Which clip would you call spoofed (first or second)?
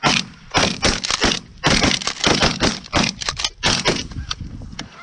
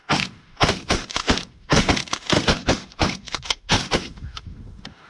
second